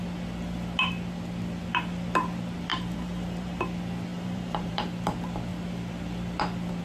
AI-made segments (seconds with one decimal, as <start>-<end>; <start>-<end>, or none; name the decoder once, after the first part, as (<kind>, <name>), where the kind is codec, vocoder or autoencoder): 2.7-3.6 (vocoder, BigVGAN v2); 4.1-4.7